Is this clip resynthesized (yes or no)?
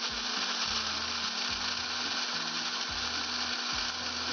no